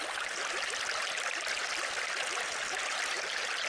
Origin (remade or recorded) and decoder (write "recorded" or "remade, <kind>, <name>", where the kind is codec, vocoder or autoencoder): recorded